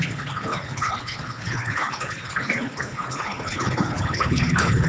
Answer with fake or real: fake